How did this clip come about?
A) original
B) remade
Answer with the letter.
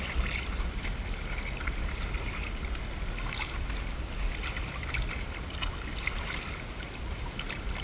A